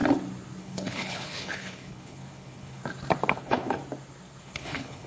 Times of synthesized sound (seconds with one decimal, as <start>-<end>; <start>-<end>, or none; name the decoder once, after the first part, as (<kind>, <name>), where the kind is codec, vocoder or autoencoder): 0.6-2.8 (codec, HILCodec); 3.3-3.8; 4.4-5.1